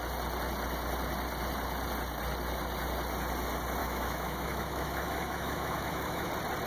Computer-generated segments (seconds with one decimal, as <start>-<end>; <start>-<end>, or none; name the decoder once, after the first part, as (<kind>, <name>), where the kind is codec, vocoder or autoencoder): 3.8-6.3 (autoencoder, DAC-VAE)